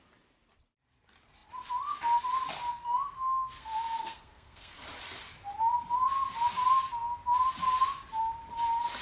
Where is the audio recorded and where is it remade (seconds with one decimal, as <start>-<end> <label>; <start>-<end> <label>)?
0.0-2.7 recorded; 2.7-4.7 remade; 4.7-9.0 recorded